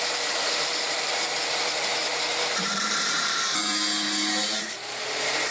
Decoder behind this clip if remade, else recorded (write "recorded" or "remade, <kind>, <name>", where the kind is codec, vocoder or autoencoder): remade, vocoder, BigVGAN v2